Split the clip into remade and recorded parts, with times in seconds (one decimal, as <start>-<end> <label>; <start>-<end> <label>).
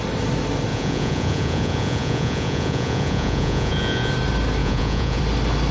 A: 0.0-0.7 recorded; 0.7-4.1 remade; 4.1-4.6 recorded; 4.6-5.2 remade; 5.2-5.7 recorded